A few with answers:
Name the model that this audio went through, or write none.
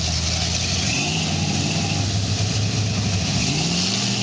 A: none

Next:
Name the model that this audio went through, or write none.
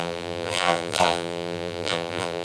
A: vocoder, BigVGAN v2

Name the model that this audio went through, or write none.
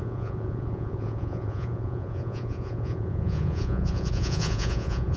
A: vocoder, Vocos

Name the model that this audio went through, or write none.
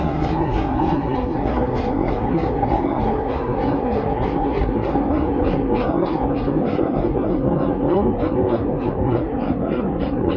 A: codec, SNAC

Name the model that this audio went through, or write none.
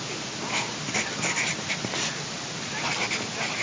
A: none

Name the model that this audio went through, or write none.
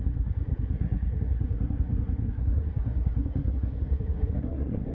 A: codec, SNAC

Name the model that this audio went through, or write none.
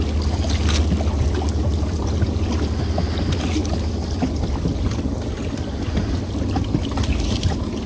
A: none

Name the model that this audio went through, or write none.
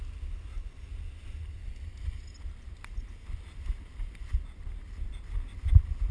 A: none